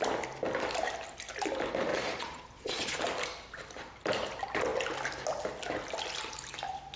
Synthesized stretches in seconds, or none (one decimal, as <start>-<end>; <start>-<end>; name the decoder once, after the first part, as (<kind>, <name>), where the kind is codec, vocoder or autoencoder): 1.9-3.0 (vocoder, Vocos)